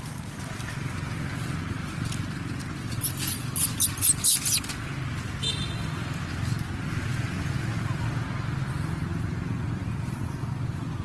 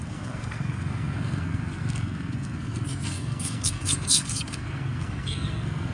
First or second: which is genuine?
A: first